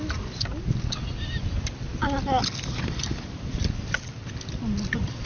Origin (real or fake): real